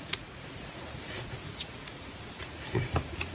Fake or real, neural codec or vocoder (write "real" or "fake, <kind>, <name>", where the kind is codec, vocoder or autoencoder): fake, vocoder, Vocos